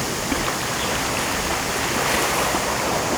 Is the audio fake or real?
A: real